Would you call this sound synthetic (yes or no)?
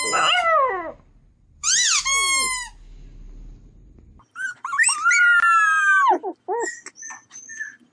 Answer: no